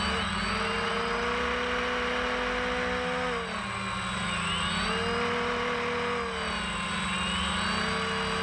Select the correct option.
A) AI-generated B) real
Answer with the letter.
B